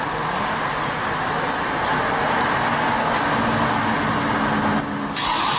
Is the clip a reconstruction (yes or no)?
no